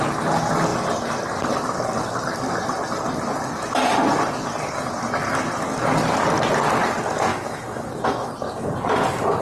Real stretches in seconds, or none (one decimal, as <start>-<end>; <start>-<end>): 0.0-7.3; 8.3-9.4